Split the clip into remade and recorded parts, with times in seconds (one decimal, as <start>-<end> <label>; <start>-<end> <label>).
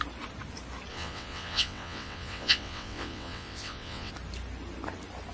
0.0-0.9 recorded; 0.9-4.1 remade; 4.1-5.3 recorded